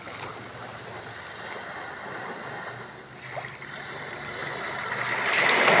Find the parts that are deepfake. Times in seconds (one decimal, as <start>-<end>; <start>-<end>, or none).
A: none